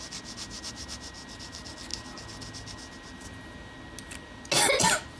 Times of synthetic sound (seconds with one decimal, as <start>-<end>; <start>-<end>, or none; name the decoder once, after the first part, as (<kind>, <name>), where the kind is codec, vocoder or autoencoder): none